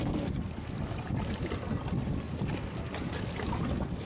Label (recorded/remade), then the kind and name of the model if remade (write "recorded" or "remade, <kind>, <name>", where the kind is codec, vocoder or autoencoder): recorded